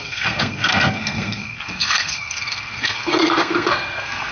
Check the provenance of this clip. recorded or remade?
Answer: remade